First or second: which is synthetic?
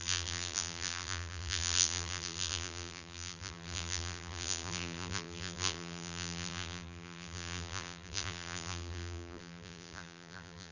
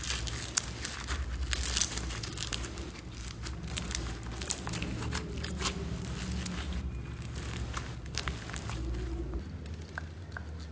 first